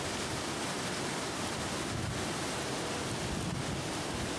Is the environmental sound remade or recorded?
recorded